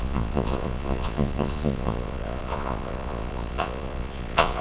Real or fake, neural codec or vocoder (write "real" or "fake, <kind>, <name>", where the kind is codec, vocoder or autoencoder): fake, vocoder, Vocos